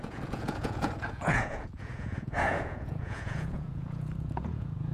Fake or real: fake